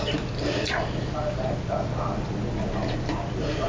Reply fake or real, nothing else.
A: real